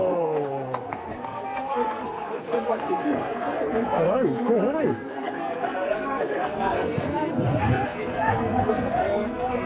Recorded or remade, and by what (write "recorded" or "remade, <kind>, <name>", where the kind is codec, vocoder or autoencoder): remade, codec, SNAC